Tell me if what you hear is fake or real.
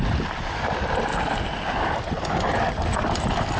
real